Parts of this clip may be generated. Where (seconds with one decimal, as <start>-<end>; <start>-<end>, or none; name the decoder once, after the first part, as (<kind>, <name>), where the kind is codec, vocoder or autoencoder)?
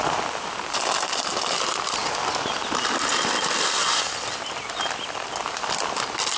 none